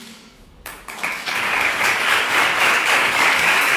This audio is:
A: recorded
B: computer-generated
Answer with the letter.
B